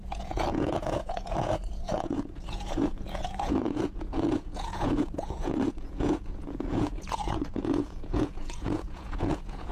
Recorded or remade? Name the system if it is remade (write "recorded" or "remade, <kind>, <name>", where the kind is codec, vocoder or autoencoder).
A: remade, vocoder, Vocos